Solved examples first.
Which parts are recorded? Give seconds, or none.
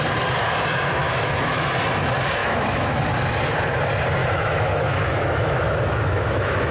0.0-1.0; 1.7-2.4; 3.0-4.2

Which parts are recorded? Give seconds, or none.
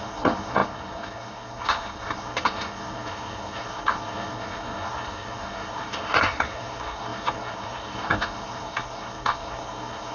none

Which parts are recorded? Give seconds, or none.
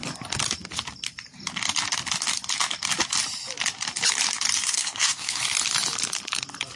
0.0-4.6; 5.4-6.8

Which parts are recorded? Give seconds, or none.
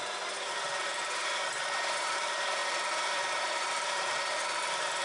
none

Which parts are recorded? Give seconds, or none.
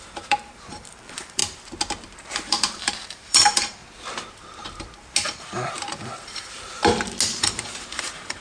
1.4-2.2; 3.8-5.7; 6.8-7.4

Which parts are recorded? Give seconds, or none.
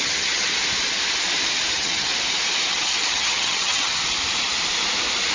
0.5-1.7; 2.1-2.7; 4.0-5.3